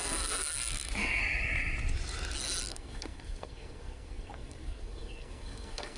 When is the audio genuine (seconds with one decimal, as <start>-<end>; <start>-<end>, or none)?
1.2-2.7